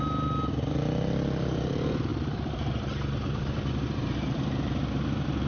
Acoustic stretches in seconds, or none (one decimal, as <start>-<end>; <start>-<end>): 0.0-2.1